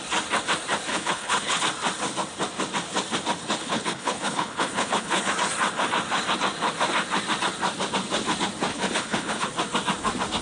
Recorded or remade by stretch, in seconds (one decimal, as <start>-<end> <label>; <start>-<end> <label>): 0.0-0.9 recorded; 0.9-1.6 remade; 1.6-3.6 recorded; 3.6-5.3 remade; 5.3-8.7 recorded; 8.7-9.5 remade; 9.5-10.4 recorded